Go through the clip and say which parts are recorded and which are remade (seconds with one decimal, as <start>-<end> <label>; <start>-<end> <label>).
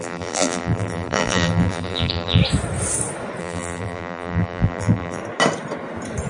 0.0-2.4 remade; 2.4-3.4 recorded; 3.4-5.2 remade; 5.2-6.3 recorded